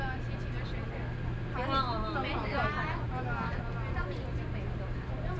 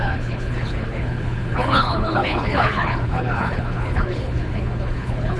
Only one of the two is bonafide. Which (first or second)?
first